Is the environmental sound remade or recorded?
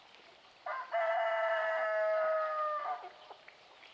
recorded